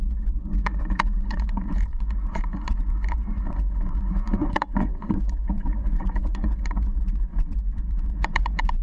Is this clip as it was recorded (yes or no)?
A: no